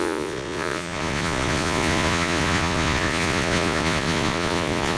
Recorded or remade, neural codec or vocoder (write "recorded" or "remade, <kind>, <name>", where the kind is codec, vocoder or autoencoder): remade, vocoder, Vocos